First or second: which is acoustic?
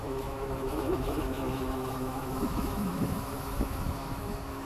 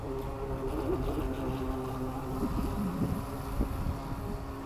second